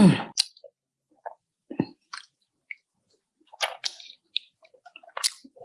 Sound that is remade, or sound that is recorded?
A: recorded